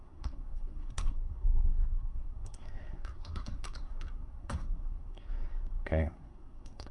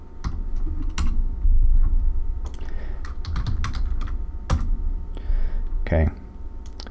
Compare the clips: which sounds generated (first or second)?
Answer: first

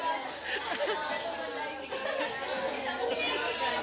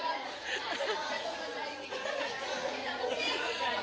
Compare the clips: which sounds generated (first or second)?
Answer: second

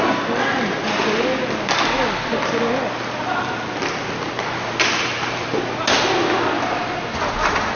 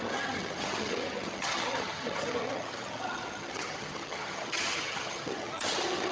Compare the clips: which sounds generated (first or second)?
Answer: second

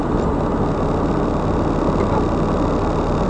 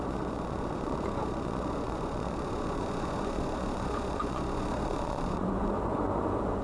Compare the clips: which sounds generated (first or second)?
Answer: second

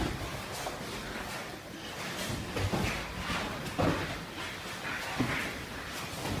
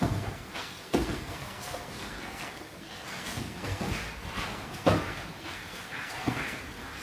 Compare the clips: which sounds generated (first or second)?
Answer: second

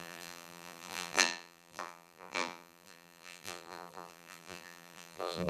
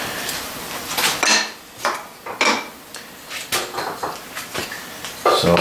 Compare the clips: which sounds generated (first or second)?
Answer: first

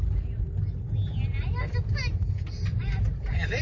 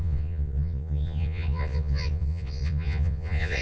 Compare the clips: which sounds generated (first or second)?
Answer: second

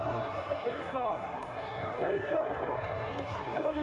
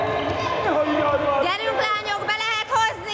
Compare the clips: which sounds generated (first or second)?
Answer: first